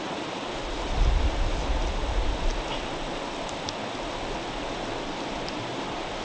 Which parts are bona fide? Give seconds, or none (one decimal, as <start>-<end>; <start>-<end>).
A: 0.0-6.2